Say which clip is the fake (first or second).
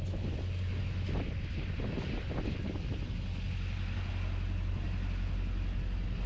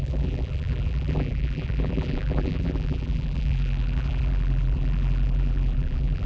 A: second